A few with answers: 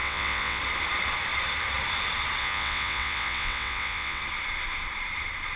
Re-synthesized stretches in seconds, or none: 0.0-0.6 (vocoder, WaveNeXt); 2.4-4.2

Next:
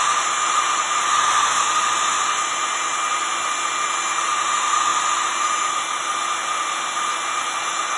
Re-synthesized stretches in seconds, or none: none